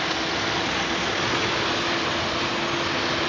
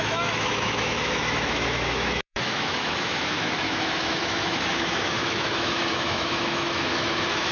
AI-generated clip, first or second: second